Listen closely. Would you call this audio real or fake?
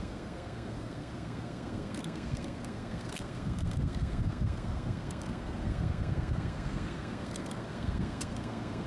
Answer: fake